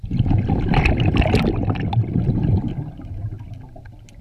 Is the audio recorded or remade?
recorded